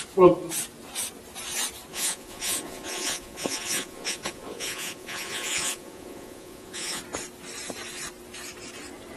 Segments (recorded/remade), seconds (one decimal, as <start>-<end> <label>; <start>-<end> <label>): 0.0-1.9 recorded; 1.9-7.0 remade; 7.0-9.2 recorded